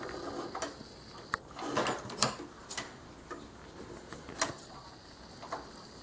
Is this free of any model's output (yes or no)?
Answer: yes